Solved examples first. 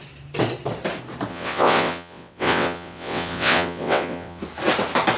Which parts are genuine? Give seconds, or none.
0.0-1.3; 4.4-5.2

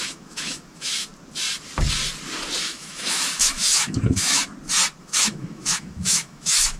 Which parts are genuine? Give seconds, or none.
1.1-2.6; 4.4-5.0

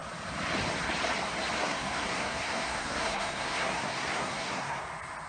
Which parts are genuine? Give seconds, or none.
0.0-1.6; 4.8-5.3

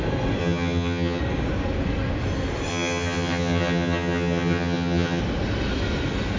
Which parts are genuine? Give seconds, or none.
0.0-0.4; 1.2-2.7; 5.2-6.4

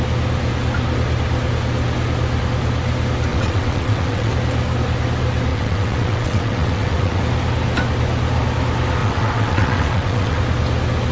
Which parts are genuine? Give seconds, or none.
0.0-3.3; 4.3-5.5; 7.2-9.0; 10.4-11.1

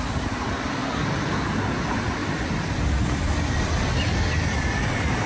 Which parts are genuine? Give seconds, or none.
0.0-2.2; 4.8-5.3